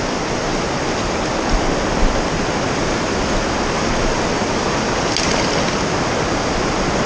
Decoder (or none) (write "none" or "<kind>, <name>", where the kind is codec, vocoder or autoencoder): none